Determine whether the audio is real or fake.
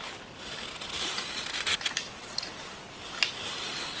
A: real